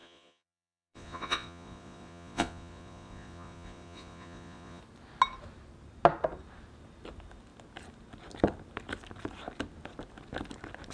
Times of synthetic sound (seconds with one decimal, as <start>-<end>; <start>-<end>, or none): 0.0-4.8